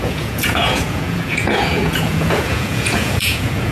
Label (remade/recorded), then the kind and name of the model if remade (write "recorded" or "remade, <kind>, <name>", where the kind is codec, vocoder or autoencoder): remade, vocoder, Vocos